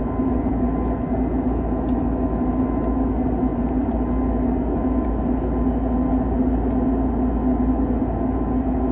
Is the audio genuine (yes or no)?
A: yes